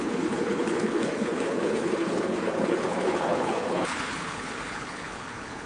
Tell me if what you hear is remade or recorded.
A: remade